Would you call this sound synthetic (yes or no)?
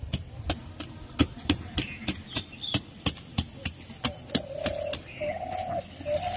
no